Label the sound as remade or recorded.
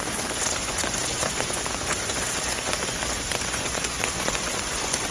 remade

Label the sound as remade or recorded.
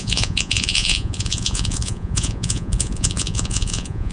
remade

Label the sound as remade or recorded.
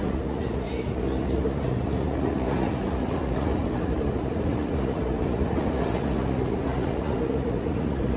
remade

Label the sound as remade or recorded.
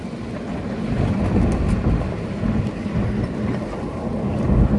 recorded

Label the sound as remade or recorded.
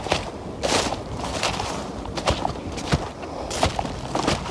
recorded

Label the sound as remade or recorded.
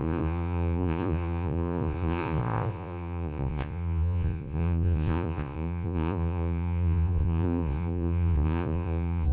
remade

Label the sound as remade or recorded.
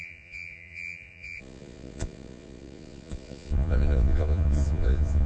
remade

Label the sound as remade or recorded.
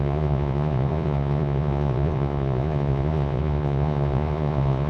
remade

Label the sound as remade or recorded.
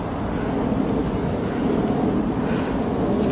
recorded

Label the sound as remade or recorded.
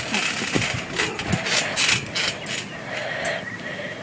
recorded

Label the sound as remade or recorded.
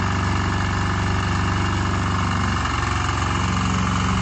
recorded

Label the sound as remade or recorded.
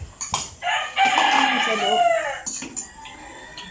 recorded